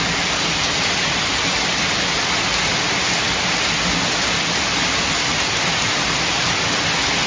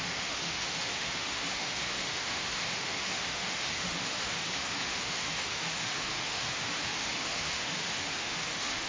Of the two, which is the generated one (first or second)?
second